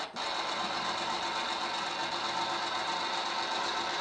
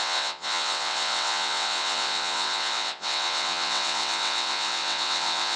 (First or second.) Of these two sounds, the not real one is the second